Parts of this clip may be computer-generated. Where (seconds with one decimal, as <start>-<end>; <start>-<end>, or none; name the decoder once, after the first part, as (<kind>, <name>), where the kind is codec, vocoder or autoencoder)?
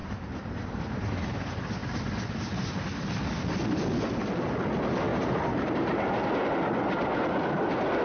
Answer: 0.0-1.1 (vocoder, BigVGAN v2); 5.1-6.3